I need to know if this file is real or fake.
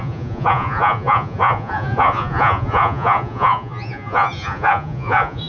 fake